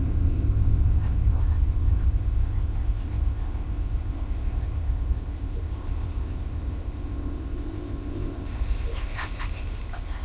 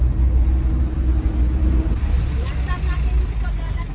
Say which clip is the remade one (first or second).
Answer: first